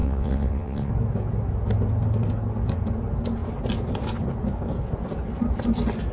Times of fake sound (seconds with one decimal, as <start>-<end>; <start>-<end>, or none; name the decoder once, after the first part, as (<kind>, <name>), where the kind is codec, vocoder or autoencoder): 0.0-0.9 (vocoder, WaveNeXt)